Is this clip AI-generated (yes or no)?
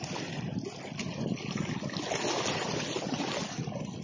no